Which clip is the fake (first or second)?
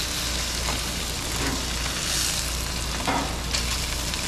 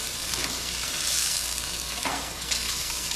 second